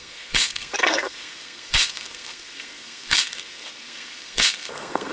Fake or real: fake